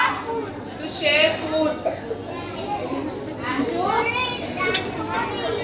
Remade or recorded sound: recorded